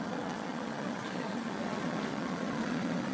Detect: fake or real fake